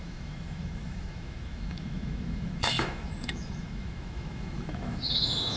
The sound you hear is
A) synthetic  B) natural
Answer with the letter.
A